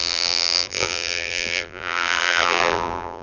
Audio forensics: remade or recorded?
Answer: remade